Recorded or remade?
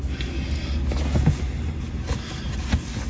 recorded